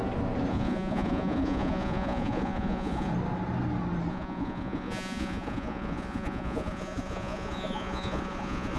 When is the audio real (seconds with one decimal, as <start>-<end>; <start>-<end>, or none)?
0.0-0.5; 3.1-4.1